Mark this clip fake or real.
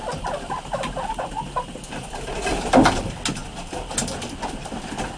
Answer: real